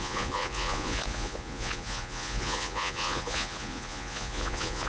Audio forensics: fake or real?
fake